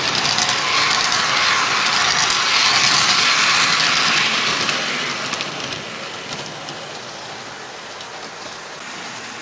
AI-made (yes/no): no